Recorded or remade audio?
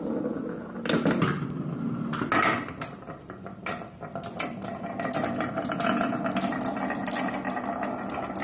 recorded